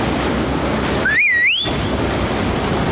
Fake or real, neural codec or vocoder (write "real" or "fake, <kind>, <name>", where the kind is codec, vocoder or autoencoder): real